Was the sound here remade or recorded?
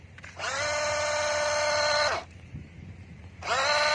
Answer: recorded